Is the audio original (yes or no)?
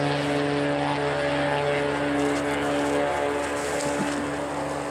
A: yes